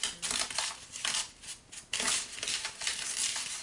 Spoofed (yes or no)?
no